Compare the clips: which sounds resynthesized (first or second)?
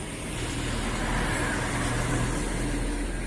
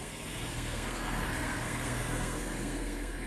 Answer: second